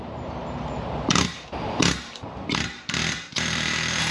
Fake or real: fake